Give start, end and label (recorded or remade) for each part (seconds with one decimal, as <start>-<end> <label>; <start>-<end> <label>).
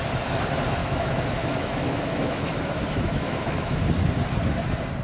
0.0-0.8 recorded; 0.8-3.8 remade; 3.8-5.0 recorded